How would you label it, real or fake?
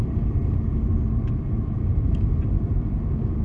fake